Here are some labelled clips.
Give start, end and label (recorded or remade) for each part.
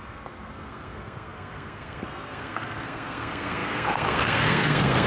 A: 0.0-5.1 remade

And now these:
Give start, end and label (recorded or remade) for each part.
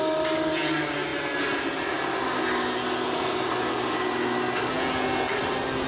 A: 0.0-5.9 recorded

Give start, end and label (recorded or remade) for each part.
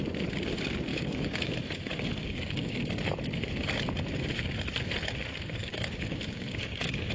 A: 0.0-0.9 recorded; 0.9-1.5 remade; 1.5-2.2 recorded; 2.2-2.8 remade; 2.8-5.6 recorded; 5.6-7.1 remade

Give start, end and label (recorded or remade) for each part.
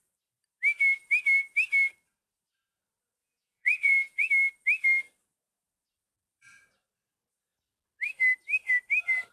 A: 0.0-3.2 recorded; 3.2-4.3 remade; 4.3-9.3 recorded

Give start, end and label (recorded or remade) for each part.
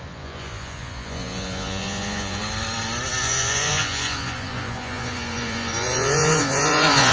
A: 0.0-2.4 remade; 2.4-3.2 recorded; 3.2-7.1 remade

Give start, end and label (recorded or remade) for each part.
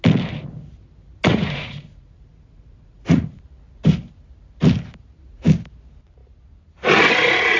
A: 0.0-1.3 recorded; 1.3-3.5 remade; 3.5-7.6 recorded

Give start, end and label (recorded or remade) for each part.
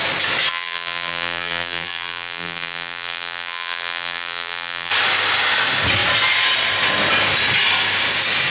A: 0.0-0.5 recorded; 0.5-4.9 remade; 4.9-8.5 recorded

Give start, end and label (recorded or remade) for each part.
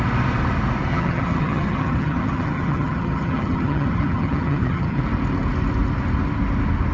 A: 0.0-0.9 recorded; 0.9-5.0 remade; 5.0-6.9 recorded